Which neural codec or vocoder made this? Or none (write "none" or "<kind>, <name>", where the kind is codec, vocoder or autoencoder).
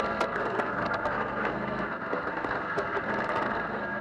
codec, SNAC